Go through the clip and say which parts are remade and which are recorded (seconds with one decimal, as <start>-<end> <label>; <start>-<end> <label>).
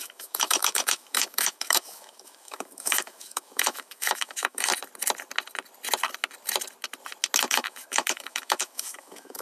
0.0-4.7 remade; 4.7-7.5 recorded; 7.5-9.4 remade